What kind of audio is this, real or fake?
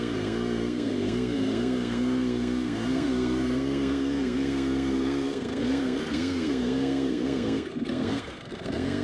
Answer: fake